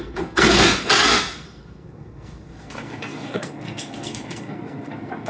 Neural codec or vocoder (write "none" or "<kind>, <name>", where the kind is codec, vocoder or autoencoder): codec, SNAC